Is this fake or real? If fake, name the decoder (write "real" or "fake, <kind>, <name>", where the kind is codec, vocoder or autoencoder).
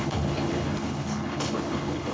fake, codec, HILCodec